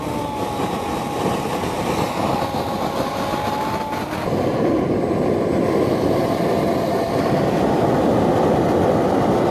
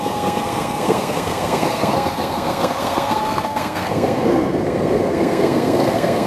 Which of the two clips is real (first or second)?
first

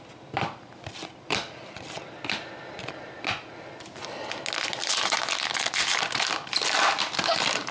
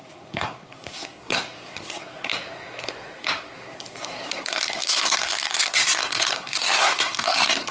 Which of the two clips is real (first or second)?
first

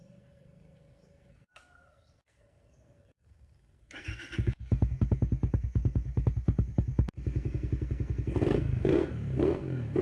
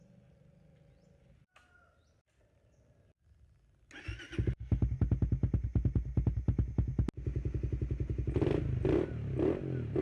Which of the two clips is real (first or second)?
second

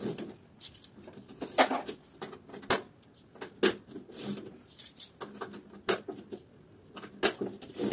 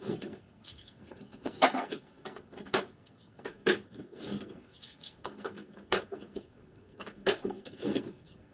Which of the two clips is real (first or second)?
first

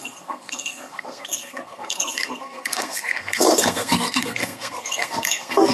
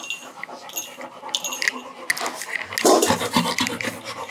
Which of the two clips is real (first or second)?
second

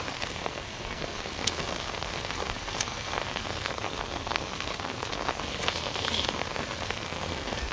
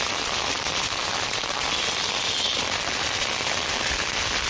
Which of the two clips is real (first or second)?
second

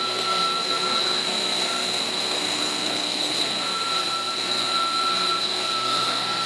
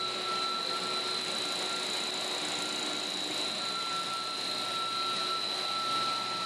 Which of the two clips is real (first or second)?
second